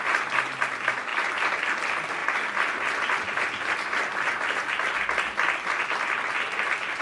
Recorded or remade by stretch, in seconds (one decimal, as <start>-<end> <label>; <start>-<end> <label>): 0.0-7.0 recorded